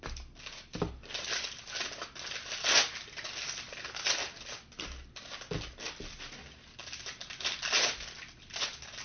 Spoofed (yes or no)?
no